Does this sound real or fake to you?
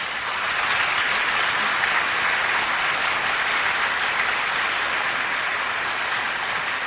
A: real